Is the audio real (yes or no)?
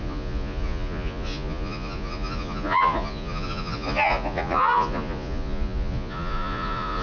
no